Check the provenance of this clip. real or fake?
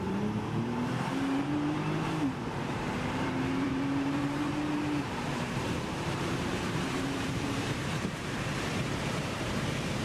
fake